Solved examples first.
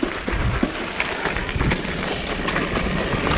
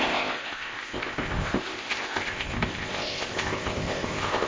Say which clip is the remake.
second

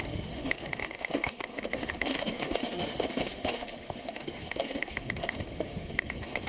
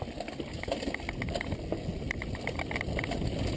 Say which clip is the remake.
first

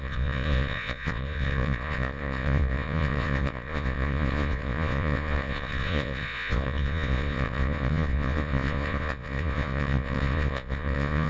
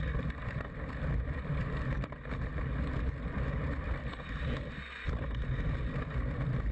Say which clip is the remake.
first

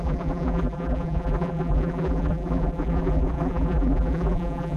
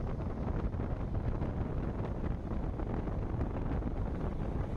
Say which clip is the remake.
first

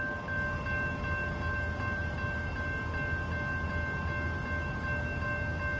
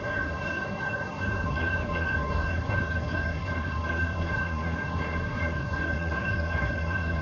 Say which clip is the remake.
second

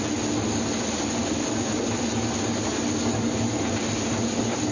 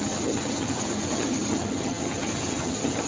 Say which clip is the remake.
second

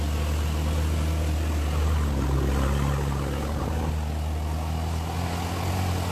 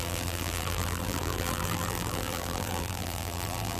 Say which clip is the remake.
second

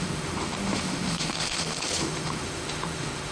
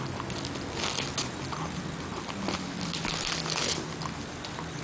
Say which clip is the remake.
first